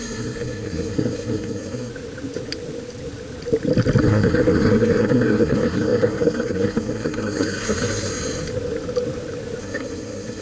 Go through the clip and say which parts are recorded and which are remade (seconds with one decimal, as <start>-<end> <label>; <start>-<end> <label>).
0.0-1.9 remade; 1.9-4.0 recorded; 4.0-8.1 remade; 8.1-9.6 recorded; 9.6-10.4 remade